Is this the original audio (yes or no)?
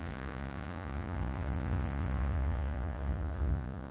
no